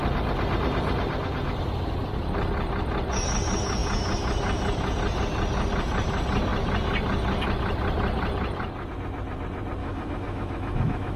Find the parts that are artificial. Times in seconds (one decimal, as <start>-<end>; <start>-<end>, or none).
9.8-11.2